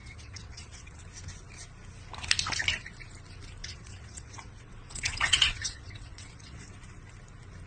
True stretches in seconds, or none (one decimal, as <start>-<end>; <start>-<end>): 1.0-3.6; 6.7-7.7

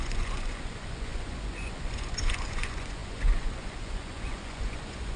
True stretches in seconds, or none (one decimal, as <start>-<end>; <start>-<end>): none

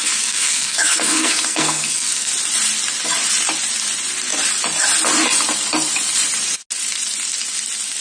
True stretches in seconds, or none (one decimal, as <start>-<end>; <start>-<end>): 2.3-8.0

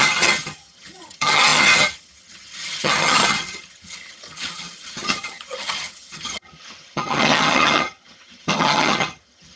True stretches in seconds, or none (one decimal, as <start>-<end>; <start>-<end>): none

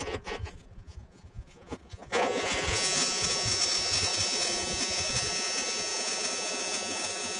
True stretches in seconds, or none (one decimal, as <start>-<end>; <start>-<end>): none

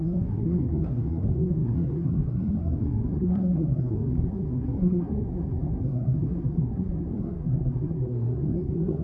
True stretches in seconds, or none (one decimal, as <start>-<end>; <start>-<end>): none

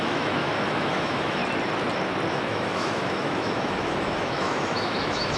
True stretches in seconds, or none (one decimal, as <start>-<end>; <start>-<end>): 1.4-2.3